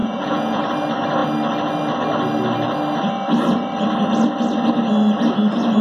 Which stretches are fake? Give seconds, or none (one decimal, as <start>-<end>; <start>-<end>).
0.0-0.6